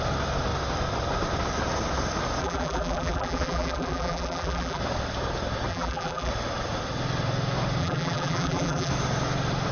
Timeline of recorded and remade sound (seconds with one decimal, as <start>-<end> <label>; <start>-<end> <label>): 0.0-2.4 recorded; 2.4-4.8 remade; 4.8-5.7 recorded; 5.7-6.3 remade; 6.3-7.8 recorded; 7.8-8.9 remade; 8.9-9.7 recorded